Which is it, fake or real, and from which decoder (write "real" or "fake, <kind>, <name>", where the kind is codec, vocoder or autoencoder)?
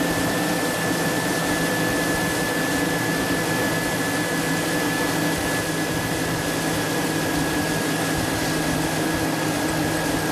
real